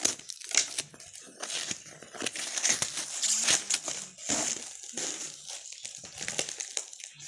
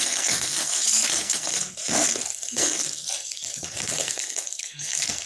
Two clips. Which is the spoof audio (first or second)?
second